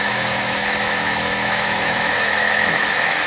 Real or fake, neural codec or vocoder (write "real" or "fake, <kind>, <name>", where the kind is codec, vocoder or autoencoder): fake, autoencoder, DAC-VAE